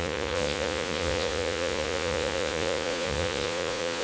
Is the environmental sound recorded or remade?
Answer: remade